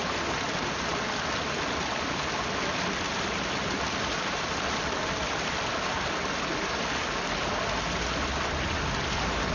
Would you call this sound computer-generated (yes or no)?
no